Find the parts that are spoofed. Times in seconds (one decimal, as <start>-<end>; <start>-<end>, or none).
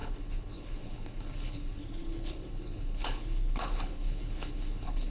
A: 0.0-5.1